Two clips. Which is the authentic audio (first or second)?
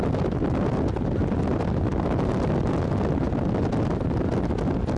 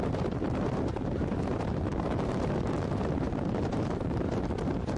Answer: first